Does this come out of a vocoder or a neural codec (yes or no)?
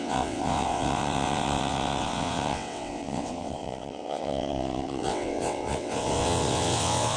yes